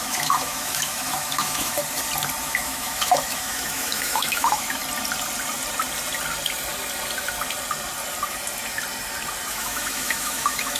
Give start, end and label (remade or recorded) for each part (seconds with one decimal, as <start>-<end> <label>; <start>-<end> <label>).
0.0-1.8 remade; 1.8-2.4 recorded; 2.4-4.8 remade; 4.8-9.5 recorded; 9.5-10.8 remade